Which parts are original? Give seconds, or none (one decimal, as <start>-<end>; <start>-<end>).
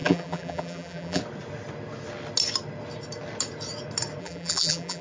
1.2-4.2